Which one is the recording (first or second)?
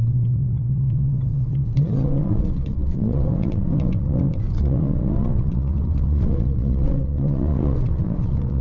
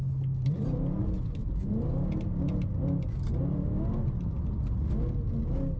second